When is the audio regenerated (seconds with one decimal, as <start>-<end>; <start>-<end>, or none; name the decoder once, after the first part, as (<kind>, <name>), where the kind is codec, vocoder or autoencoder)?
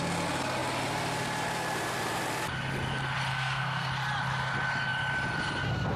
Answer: 3.3-3.9 (codec, SNAC)